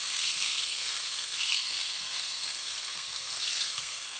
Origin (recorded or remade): remade